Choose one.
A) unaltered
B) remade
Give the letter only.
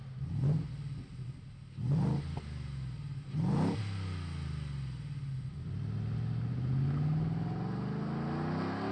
A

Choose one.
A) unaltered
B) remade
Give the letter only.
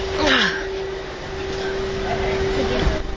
A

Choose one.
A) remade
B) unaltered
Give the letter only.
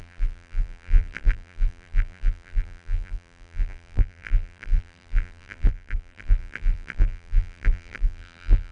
A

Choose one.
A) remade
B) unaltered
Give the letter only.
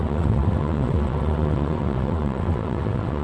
A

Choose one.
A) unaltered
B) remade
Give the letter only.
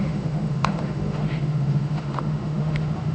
B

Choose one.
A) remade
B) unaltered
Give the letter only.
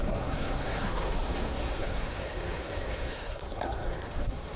A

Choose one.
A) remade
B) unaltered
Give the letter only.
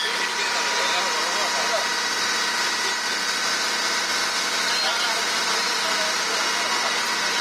B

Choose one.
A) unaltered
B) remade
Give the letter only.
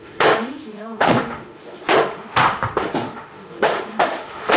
B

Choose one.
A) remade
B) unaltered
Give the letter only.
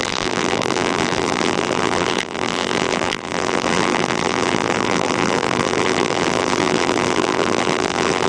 A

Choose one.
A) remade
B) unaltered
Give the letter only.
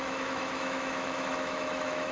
A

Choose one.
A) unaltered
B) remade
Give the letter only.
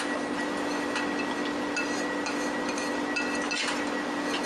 A